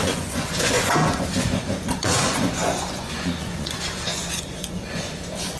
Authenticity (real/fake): fake